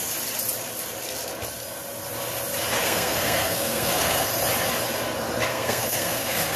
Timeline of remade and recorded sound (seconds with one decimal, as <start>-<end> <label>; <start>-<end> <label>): 0.0-2.8 recorded; 2.8-4.3 remade; 4.3-5.5 recorded; 5.5-6.6 remade